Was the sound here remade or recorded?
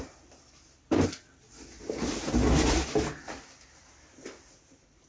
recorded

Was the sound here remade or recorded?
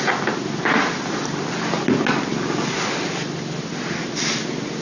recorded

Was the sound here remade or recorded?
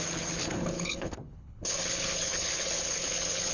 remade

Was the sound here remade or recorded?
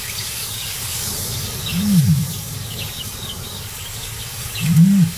remade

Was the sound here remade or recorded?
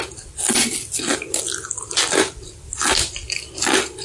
recorded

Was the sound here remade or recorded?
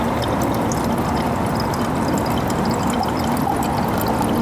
recorded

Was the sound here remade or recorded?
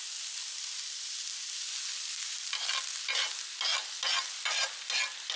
recorded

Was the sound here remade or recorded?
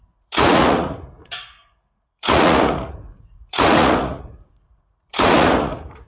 remade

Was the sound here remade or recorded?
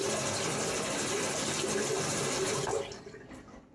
recorded